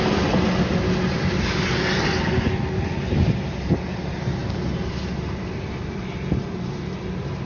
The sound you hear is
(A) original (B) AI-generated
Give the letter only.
A